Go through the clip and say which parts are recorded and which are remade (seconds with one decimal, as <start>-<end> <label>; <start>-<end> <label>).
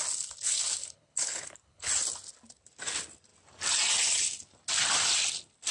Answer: 0.0-0.8 recorded; 0.8-1.9 remade; 1.9-5.7 recorded